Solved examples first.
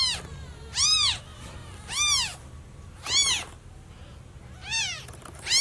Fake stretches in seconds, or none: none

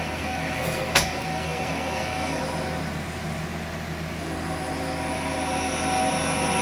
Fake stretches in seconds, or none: 0.0-2.4 (codec, SNAC)

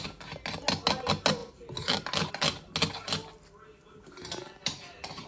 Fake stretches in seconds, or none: none

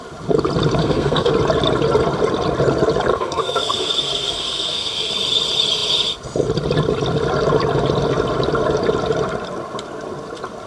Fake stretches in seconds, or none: 0.8-1.3 (codec, SNAC); 3.1-5.1